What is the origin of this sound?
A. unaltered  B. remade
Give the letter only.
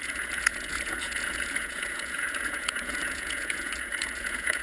B